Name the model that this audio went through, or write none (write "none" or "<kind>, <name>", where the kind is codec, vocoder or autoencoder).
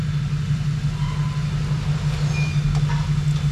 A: none